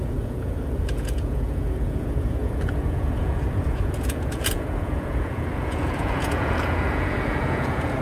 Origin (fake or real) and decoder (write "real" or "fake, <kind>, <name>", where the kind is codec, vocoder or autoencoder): fake, vocoder, Vocos